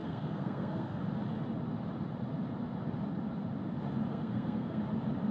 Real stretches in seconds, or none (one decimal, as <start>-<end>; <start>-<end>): 1.0-4.1; 4.8-5.3